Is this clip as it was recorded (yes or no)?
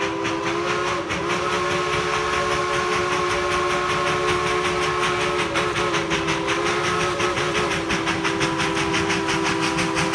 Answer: yes